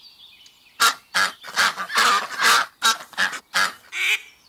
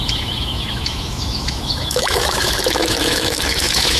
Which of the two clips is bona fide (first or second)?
first